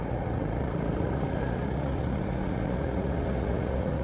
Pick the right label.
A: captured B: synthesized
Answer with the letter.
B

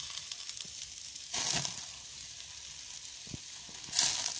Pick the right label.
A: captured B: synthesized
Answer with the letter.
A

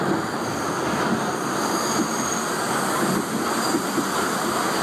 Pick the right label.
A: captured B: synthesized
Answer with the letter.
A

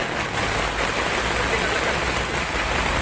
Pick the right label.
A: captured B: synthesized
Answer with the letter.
A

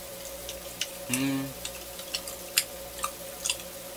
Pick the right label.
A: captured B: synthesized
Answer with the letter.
A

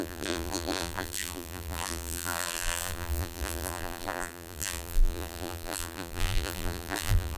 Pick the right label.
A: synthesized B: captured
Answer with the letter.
A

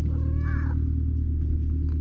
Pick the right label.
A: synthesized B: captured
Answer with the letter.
B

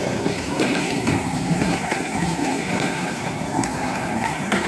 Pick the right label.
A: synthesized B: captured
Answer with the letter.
A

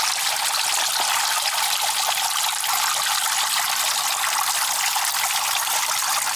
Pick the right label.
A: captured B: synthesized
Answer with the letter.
A